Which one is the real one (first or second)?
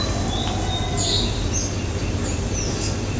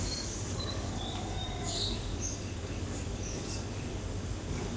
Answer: first